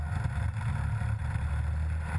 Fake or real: real